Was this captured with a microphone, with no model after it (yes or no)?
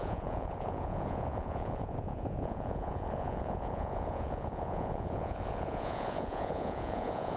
no